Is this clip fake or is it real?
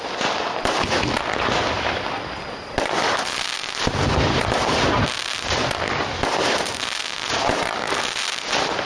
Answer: real